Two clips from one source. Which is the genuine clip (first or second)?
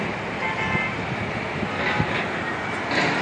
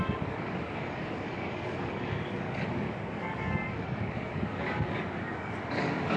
first